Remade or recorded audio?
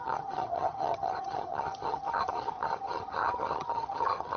remade